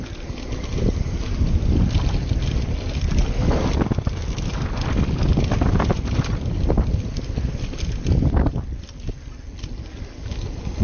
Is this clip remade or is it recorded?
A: recorded